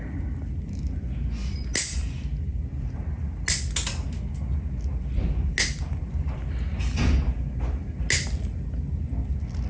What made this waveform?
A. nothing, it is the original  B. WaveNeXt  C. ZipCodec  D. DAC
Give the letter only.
A